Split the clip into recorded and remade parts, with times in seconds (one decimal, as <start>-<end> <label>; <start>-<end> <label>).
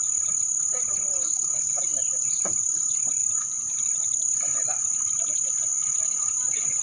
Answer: 0.0-6.8 recorded